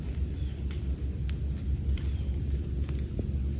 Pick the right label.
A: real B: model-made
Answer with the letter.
A